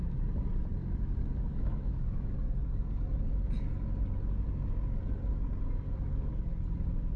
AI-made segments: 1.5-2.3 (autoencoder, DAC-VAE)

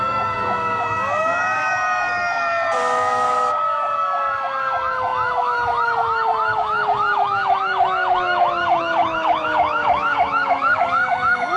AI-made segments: 0.0-11.6 (codec, DAC)